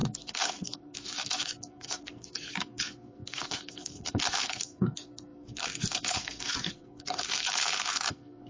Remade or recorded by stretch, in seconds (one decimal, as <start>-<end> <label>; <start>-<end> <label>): 0.0-8.5 remade